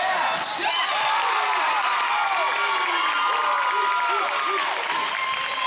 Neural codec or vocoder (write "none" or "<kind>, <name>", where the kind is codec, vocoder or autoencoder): none